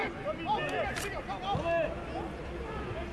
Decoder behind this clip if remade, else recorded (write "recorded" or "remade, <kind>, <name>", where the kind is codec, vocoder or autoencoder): recorded